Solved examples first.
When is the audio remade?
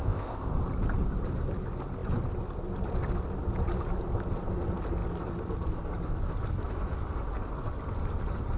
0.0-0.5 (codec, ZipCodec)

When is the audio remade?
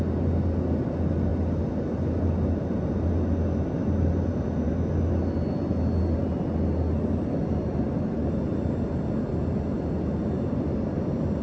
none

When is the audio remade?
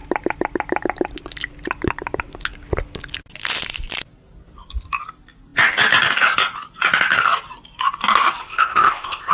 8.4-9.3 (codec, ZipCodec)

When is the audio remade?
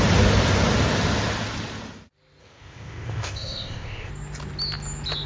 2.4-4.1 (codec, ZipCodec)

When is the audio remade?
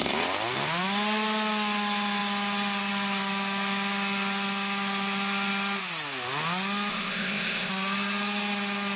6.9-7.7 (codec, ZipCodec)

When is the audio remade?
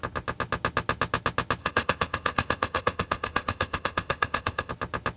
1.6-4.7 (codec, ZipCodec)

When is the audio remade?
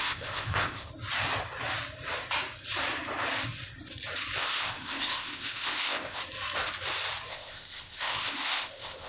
0.0-0.9 (codec, ZipCodec); 4.4-6.2; 7.3-9.1